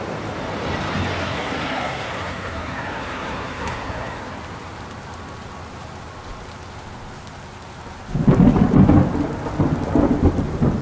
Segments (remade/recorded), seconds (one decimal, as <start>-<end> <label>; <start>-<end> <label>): 0.0-1.2 recorded; 1.2-4.3 remade; 4.3-10.8 recorded